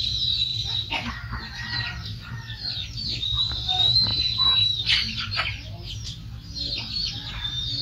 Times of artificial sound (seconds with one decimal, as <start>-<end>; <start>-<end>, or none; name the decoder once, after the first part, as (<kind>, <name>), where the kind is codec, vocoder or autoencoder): 0.5-1.1 (vocoder, BigVGAN v2); 2.8-3.4